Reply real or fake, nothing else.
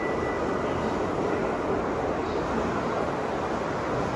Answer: real